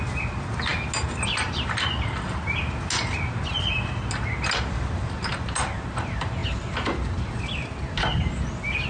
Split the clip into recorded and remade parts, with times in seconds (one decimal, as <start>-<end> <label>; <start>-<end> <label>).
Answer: 0.0-8.9 recorded